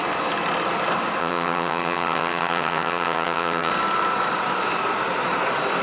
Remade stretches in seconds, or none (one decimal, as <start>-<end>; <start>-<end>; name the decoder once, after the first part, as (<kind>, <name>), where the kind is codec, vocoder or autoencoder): 1.2-3.7 (vocoder, HiFi-GAN)